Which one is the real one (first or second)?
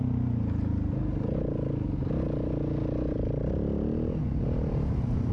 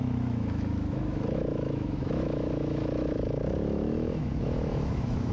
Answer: first